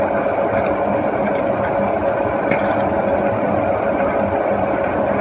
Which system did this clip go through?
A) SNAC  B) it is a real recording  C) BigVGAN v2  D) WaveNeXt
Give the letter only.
B